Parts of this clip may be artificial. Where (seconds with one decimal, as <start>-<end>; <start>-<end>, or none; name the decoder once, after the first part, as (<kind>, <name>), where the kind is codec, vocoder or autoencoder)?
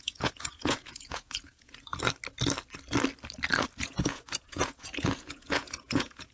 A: 0.0-1.9 (vocoder, Vocos); 3.8-6.3